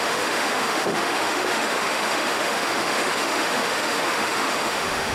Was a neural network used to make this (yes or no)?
yes